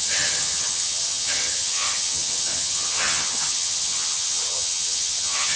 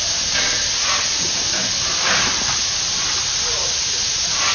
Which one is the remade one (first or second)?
first